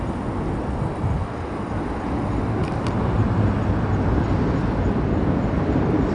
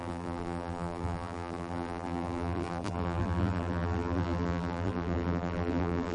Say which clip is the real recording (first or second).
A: first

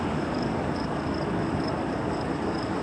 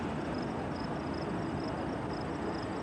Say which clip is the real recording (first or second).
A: second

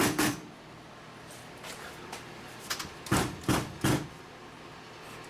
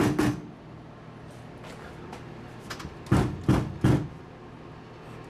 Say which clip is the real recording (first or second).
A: second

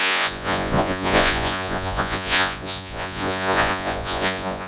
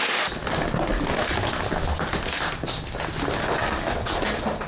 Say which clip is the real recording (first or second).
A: second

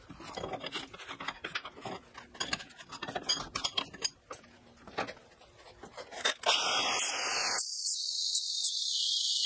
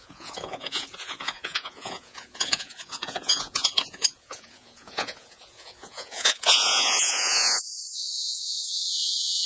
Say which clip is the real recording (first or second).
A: first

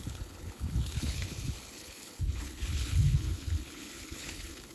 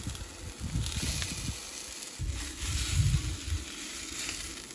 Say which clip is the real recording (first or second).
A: second